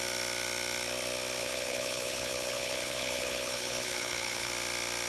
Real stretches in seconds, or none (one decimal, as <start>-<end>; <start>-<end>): 0.0-1.4; 4.5-5.1